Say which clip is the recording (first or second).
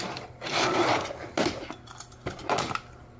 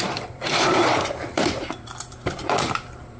first